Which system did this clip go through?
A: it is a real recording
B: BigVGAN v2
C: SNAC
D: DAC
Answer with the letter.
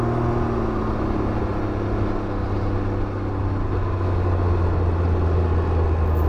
A